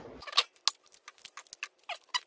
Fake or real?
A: real